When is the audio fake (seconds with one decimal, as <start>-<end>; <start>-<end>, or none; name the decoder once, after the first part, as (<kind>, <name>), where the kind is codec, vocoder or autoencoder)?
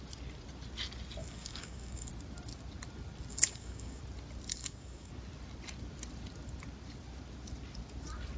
1.2-2.1 (codec, DAC); 3.3-4.0; 4.5-5.1